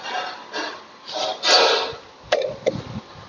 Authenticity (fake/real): real